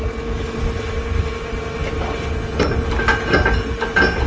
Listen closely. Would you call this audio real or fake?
real